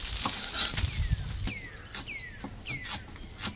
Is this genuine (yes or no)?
yes